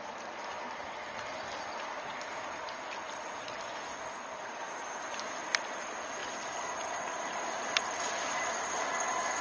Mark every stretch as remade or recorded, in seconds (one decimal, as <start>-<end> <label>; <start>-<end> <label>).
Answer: 0.0-9.4 recorded